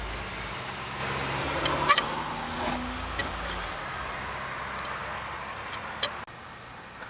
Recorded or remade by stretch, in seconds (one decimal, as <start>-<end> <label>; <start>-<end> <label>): 0.0-7.1 recorded